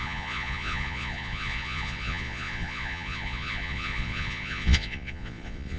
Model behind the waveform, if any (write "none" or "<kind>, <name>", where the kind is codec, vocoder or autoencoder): vocoder, Vocos